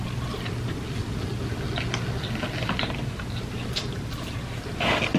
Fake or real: real